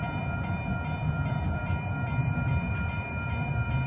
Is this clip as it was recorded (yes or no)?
no